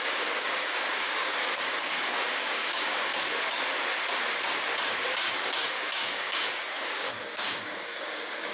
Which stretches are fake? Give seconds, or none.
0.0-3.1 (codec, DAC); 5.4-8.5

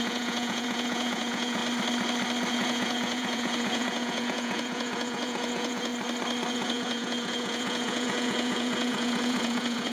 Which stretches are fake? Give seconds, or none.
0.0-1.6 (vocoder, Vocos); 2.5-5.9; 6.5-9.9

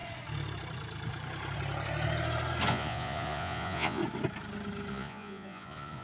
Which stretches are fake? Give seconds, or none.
2.7-4.0 (vocoder, Vocos); 4.9-6.0

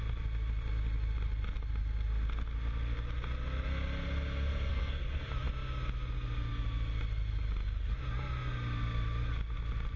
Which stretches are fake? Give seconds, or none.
4.7-5.2 (codec, SNAC)

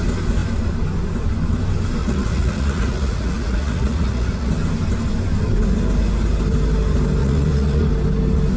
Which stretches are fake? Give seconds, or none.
2.0-4.5 (vocoder, Vocos); 7.2-7.9